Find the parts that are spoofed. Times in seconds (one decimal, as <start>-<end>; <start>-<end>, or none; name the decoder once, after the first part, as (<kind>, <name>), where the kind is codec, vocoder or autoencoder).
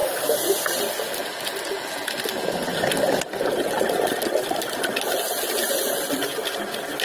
none